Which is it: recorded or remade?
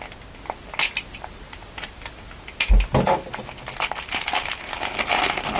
recorded